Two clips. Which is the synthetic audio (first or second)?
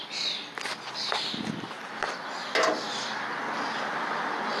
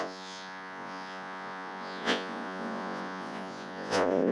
second